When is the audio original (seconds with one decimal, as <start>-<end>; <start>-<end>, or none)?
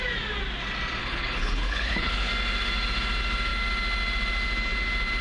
0.0-1.0; 2.3-5.2